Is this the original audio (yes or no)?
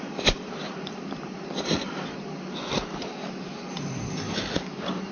yes